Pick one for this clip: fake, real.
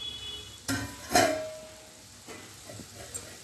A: real